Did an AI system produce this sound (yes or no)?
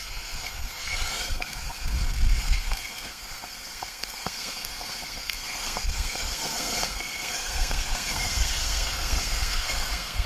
yes